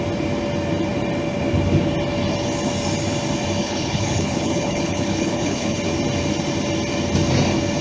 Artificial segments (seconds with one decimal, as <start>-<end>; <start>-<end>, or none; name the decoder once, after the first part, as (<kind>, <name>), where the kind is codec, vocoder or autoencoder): 3.6-5.8 (codec, HILCodec)